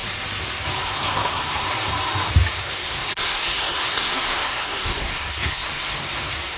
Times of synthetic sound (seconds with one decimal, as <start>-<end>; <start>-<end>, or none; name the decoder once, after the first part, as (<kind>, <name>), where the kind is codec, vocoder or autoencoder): 0.8-1.6 (codec, SNAC); 2.5-6.6